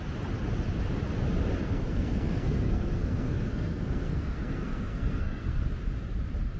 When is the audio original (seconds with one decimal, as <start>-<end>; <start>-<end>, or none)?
0.0-1.6; 5.6-6.6